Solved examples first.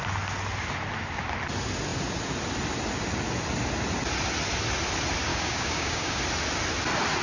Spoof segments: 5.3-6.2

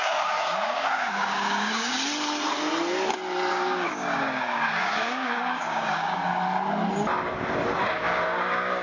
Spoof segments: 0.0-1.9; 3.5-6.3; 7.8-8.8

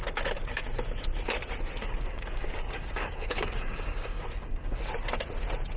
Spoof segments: 1.8-4.8

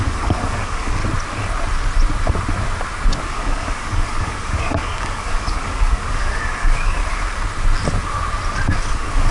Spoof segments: 0.0-1.0; 3.2-7.0; 8.9-9.3

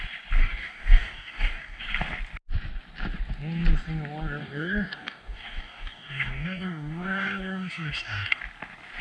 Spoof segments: 0.4-1.8; 4.4-8.4

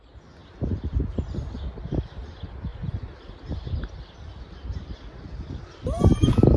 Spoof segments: none

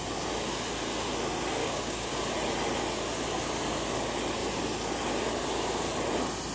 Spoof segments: 1.6-2.2

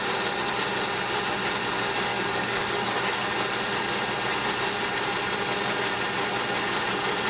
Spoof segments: 2.1-3.0